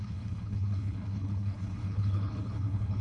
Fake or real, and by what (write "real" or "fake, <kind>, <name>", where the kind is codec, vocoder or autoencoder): fake, codec, HILCodec